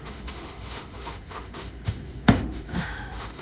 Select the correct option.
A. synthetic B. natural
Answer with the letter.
A